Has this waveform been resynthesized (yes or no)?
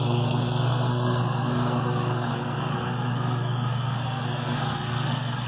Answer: yes